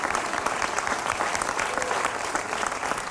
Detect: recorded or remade recorded